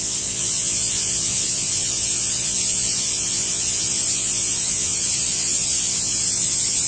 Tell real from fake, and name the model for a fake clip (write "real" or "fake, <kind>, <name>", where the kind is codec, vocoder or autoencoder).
fake, vocoder, Vocos